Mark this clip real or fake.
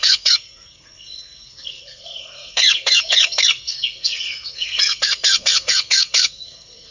fake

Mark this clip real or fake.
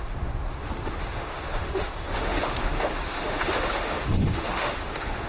fake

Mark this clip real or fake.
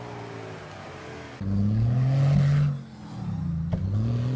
real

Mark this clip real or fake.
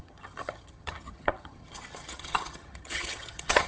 fake